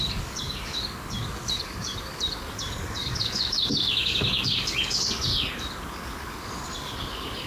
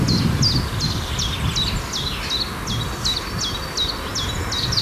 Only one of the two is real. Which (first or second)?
second